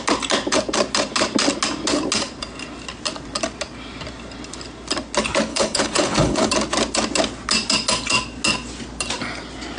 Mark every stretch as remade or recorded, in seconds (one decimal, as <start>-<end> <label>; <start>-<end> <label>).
0.0-5.5 recorded; 5.5-6.5 remade; 6.5-9.8 recorded